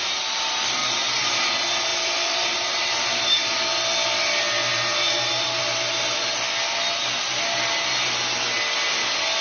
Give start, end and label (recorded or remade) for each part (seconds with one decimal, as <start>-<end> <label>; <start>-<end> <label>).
0.0-0.8 recorded; 0.8-1.5 remade; 1.5-1.9 recorded; 1.9-3.6 remade; 3.6-4.7 recorded; 4.7-5.6 remade; 5.6-9.4 recorded